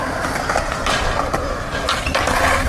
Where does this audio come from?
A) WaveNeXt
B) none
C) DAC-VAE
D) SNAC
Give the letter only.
B